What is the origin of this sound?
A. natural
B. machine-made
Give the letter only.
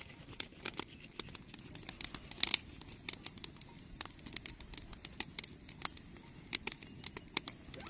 A